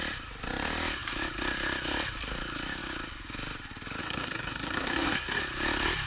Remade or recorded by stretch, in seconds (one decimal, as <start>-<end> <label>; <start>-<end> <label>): 0.0-4.0 recorded; 4.0-5.4 remade; 5.4-6.1 recorded